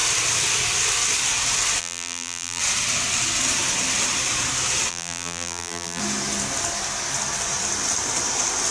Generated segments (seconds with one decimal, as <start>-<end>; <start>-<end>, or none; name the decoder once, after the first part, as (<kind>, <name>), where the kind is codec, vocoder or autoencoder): 1.8-2.6 (vocoder, BigVGAN v2); 4.9-6.0